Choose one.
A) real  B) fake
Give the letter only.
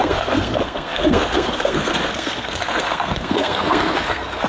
B